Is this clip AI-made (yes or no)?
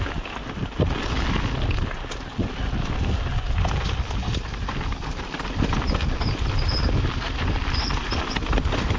no